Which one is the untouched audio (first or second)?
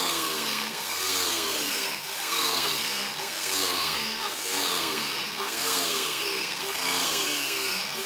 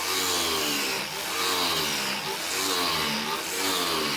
second